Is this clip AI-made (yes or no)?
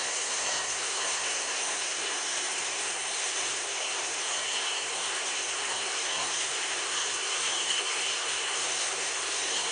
yes